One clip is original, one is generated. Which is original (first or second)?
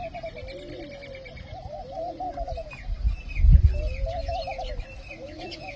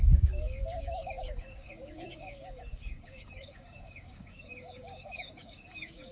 first